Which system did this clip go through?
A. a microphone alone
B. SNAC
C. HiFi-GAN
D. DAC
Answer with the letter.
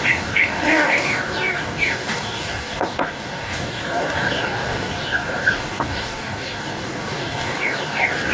D